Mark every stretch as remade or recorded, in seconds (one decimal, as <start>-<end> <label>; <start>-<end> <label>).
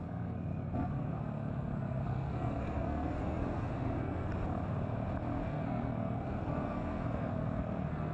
0.0-4.3 remade; 4.3-5.5 recorded; 5.5-8.1 remade